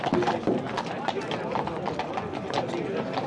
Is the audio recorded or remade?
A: recorded